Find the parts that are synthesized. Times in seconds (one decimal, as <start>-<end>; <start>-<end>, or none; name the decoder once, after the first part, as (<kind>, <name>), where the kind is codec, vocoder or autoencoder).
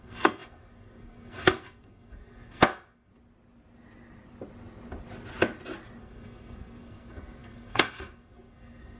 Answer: 0.0-3.1 (codec, SNAC); 6.0-9.0